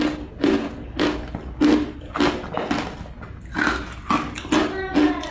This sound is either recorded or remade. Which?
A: recorded